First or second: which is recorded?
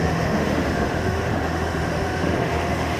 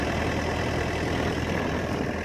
second